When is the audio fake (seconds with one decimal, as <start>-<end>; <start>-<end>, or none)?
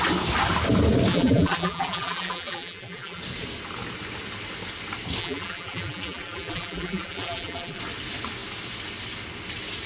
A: 1.1-3.2; 5.2-7.8